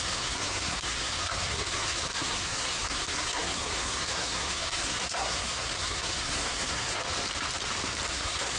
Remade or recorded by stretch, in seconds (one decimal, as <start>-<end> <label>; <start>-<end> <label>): 0.0-7.0 remade; 7.0-8.1 recorded; 8.1-8.6 remade